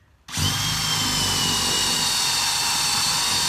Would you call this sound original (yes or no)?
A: yes